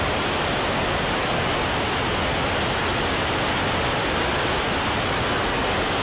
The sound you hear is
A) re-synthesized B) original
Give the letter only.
B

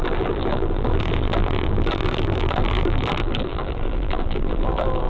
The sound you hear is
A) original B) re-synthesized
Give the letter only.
B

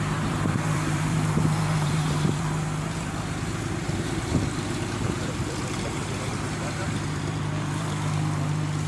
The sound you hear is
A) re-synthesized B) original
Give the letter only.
A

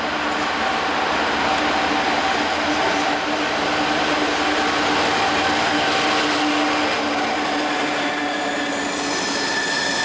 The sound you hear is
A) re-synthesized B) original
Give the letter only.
B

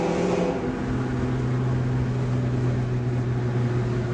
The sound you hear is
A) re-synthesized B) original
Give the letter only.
B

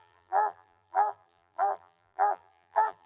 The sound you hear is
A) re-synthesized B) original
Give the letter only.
A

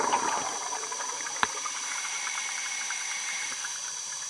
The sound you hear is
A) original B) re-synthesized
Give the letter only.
B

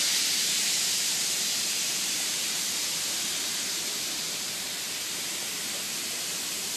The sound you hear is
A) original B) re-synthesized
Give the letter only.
B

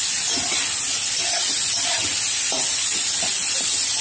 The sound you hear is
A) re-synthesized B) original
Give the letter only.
B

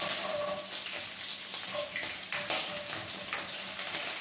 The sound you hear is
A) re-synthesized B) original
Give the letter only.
B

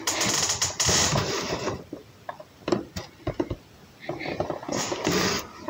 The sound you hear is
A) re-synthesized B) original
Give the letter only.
B